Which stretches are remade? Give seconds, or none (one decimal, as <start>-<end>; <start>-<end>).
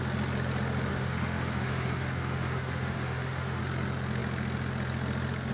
0.9-3.6